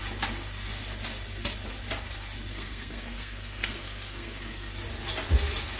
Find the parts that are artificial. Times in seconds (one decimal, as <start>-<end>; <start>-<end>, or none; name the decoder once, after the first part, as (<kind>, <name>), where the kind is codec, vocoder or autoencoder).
2.5-4.7 (codec, SNAC)